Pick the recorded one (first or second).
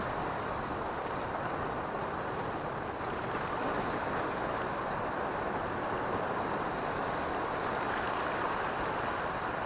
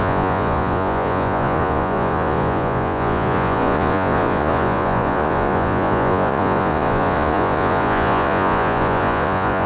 first